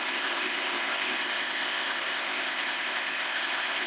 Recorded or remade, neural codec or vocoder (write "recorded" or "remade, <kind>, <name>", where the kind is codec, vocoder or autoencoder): remade, codec, ZipCodec